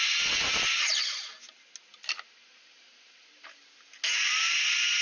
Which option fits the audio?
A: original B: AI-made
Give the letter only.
A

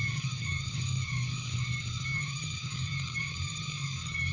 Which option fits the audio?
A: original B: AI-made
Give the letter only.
B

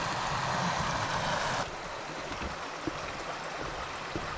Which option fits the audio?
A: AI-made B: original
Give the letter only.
B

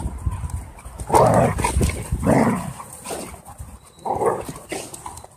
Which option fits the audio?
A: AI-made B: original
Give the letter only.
B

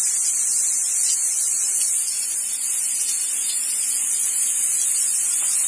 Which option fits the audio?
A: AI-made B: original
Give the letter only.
B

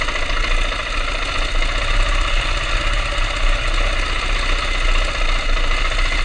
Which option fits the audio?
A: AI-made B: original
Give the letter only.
B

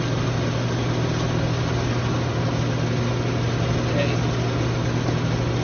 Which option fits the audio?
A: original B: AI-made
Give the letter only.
A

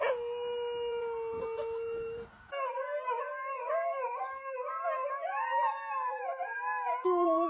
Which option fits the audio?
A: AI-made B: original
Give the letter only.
B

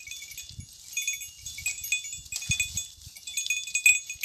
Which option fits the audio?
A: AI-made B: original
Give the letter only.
B